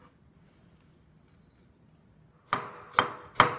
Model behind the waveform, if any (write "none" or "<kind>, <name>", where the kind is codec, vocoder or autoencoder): none